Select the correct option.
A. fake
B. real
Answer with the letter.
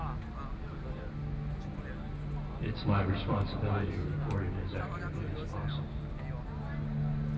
B